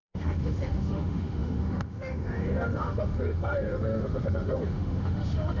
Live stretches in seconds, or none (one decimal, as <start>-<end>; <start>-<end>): none